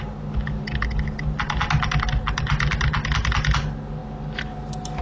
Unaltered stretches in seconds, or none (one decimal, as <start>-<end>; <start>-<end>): 0.0-5.0